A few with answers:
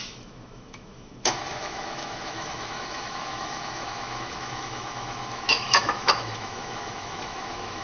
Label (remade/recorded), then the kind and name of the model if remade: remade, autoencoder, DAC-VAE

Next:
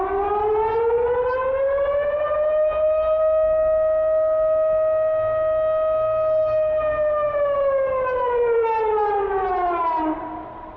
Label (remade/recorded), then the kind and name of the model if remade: recorded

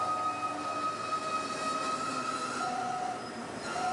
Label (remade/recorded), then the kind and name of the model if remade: recorded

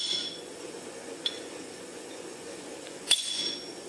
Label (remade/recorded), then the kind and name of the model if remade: remade, vocoder, Vocos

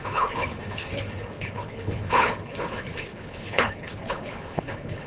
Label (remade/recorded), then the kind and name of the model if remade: remade, codec, HILCodec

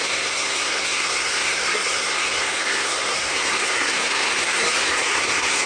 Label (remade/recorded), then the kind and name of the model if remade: remade, codec, SNAC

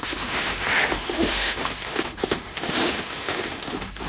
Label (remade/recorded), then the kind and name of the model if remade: remade, autoencoder, DAC-VAE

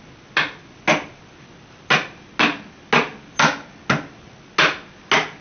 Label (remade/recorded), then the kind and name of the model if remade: recorded